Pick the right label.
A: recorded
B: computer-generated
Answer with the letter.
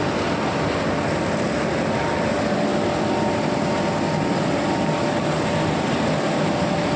A